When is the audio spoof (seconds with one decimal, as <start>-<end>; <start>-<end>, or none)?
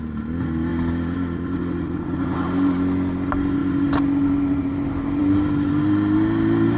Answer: none